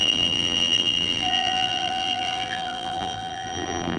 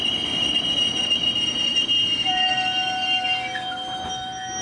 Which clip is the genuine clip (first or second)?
second